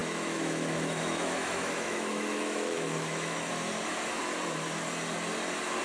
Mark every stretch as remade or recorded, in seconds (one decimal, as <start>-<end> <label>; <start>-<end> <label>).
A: 0.0-3.5 remade; 3.5-5.8 recorded